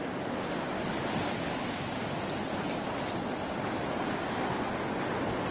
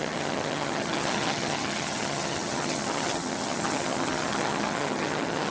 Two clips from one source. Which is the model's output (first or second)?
second